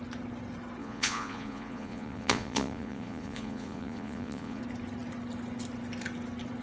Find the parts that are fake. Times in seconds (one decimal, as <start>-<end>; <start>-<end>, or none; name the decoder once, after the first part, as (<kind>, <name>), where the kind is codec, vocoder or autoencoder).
0.8-4.6 (vocoder, Vocos)

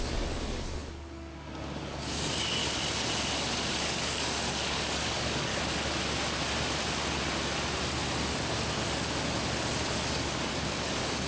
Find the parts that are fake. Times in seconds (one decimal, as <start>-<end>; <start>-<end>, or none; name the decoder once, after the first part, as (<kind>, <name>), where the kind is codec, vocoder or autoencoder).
0.0-2.6 (codec, DAC); 3.7-5.5; 10.1-11.3

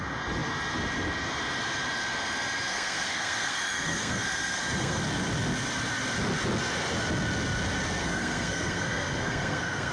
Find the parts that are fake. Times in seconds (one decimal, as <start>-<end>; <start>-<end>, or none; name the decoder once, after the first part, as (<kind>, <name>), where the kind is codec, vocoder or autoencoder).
2.7-5.0 (codec, SNAC); 8.0-9.9